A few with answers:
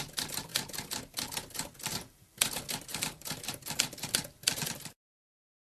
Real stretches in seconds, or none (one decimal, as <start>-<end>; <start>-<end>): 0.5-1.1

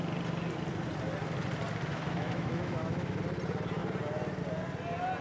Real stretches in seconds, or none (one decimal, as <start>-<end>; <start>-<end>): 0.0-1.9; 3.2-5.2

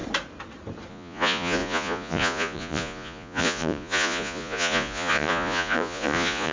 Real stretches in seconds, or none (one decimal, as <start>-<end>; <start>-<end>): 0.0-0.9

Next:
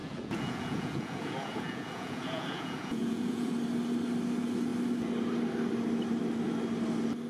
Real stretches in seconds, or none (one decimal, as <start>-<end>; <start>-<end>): 3.5-7.3

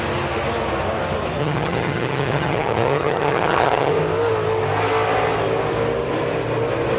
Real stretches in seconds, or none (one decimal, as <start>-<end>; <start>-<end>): 0.0-1.4; 3.9-7.0

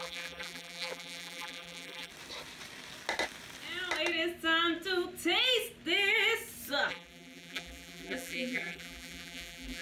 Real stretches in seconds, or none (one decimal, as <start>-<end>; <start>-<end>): 2.1-6.9

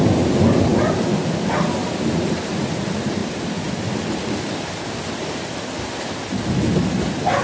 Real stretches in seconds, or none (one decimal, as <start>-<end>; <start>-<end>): 0.0-7.4

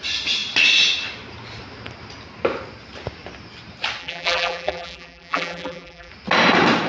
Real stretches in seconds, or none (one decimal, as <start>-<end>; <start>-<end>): 0.0-4.0; 6.1-6.9